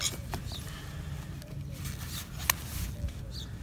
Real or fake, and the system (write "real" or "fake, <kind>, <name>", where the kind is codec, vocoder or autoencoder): real